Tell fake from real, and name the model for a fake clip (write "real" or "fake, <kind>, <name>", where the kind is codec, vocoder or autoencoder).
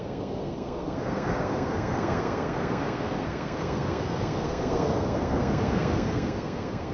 fake, codec, SNAC